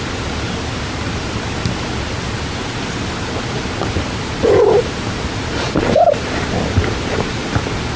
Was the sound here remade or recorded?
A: recorded